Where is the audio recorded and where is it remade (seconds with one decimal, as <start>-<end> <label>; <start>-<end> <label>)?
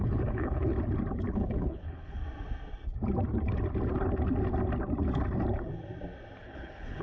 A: 0.0-0.7 remade; 0.7-1.3 recorded; 1.3-2.2 remade; 2.2-6.4 recorded; 6.4-7.0 remade